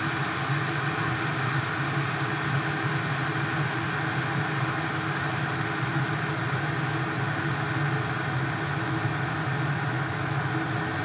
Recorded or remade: recorded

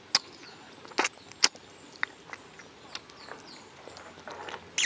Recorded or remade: recorded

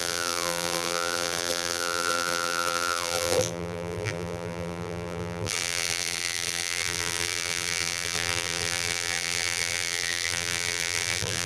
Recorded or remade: remade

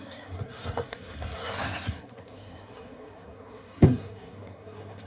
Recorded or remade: remade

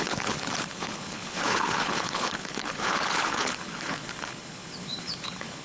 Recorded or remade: remade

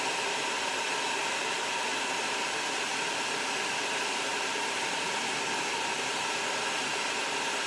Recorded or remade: recorded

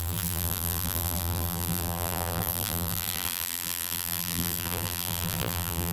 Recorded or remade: remade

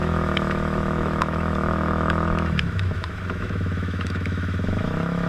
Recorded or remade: remade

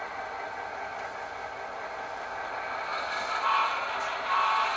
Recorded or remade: recorded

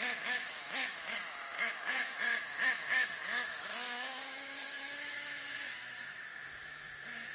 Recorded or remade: remade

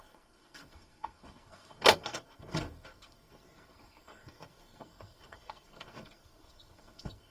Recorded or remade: remade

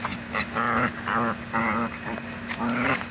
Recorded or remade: recorded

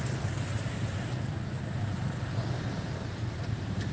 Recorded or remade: recorded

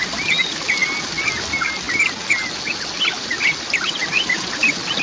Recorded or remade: recorded